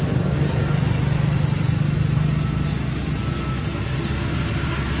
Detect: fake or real real